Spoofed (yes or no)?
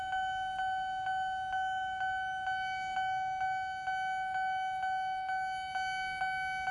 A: no